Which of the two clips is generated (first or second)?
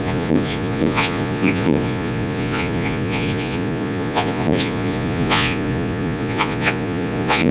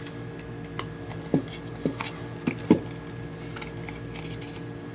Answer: first